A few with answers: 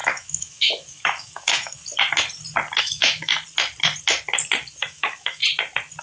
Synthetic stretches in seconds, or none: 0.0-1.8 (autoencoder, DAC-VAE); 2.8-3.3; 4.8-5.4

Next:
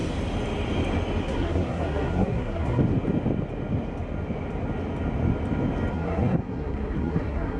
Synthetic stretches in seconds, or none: 1.2-2.8 (codec, SNAC); 5.9-7.6